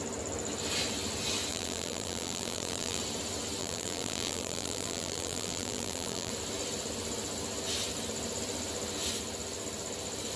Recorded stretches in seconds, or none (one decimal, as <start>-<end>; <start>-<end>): 0.0-1.5; 3.0-3.6; 6.3-10.4